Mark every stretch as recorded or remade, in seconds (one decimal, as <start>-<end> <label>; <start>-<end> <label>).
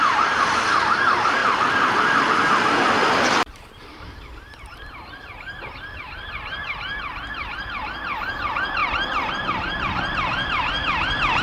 0.0-1.4 remade; 1.4-3.2 recorded; 3.2-8.8 remade; 8.8-9.3 recorded; 9.3-11.4 remade